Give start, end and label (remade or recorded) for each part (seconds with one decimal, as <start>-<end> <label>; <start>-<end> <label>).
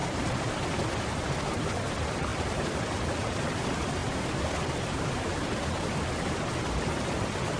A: 0.0-7.6 recorded